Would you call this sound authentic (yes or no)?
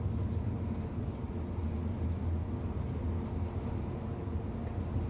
yes